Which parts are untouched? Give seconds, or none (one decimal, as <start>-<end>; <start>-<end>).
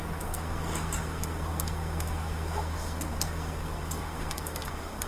none